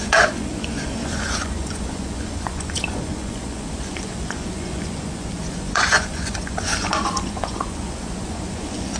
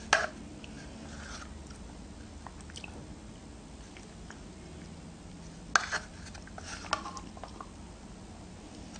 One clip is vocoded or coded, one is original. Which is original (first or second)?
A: second